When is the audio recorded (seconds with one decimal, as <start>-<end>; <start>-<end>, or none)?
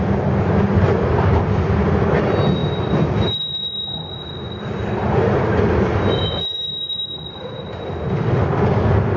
0.0-9.2